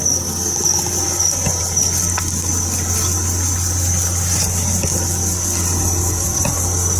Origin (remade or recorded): recorded